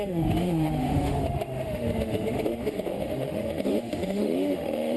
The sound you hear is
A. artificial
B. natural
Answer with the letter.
A